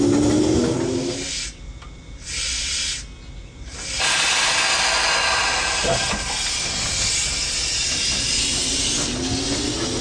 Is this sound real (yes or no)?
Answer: yes